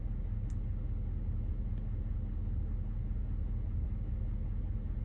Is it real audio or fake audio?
real